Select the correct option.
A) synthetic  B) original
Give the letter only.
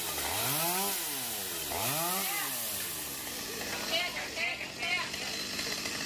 B